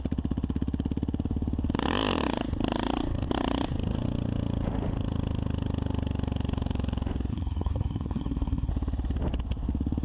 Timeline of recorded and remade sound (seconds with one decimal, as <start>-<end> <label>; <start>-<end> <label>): 0.0-7.3 recorded; 7.3-8.7 remade; 8.7-10.0 recorded